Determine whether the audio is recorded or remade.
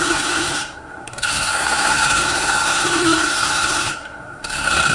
remade